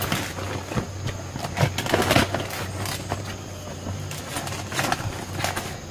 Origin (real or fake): real